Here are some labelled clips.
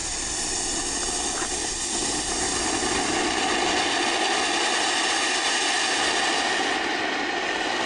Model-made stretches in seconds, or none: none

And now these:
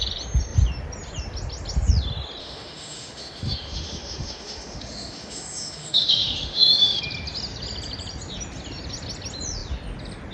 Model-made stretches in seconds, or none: 2.4-7.0 (autoencoder, DAC-VAE)

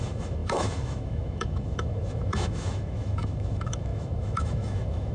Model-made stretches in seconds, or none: 0.0-5.1 (autoencoder, DAC-VAE)